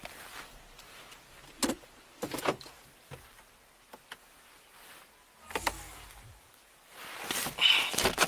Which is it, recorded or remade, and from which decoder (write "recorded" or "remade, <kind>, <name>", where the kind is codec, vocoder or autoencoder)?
recorded